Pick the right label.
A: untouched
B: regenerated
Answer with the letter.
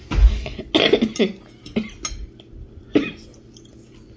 A